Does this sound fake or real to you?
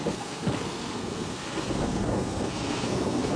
fake